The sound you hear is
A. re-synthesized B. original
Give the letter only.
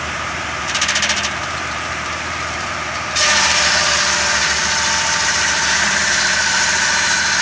A